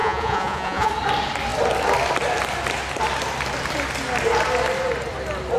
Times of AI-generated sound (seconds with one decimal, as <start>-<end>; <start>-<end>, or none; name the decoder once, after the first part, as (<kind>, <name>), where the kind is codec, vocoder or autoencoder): 0.0-0.9 (vocoder, Vocos)